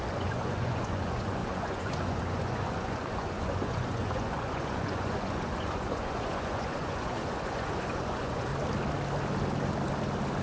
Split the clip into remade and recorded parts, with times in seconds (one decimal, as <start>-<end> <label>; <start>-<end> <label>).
0.0-8.5 remade; 8.5-10.4 recorded